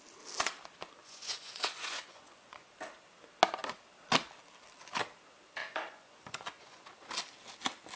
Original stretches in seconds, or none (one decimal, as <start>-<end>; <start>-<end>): 0.0-1.0; 2.7-5.6; 6.8-8.0